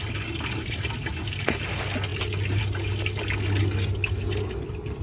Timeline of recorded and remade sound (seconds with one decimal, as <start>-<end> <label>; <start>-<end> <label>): 0.0-5.0 recorded